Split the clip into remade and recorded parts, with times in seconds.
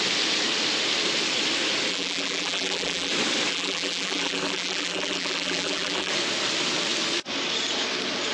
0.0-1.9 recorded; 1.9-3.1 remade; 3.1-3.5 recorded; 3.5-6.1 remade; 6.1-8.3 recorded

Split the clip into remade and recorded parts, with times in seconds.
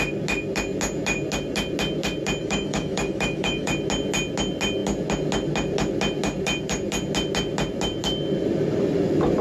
0.0-2.4 recorded; 2.4-3.7 remade; 3.7-9.4 recorded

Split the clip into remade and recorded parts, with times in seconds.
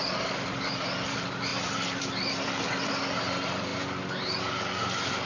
0.0-5.3 recorded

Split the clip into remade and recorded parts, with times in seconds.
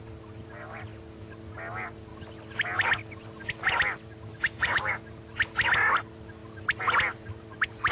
0.0-4.3 recorded; 4.3-5.0 remade; 5.0-7.9 recorded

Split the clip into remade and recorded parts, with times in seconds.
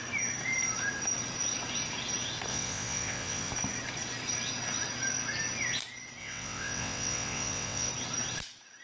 0.0-2.5 recorded; 2.5-3.5 remade; 3.5-6.2 recorded; 6.2-7.9 remade; 7.9-8.8 recorded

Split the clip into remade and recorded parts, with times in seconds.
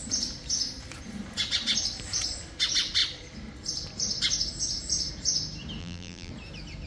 0.0-5.8 recorded; 5.8-6.3 remade; 6.3-6.9 recorded